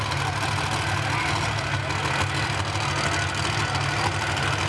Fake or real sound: real